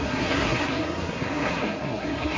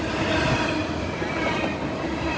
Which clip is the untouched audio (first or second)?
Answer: second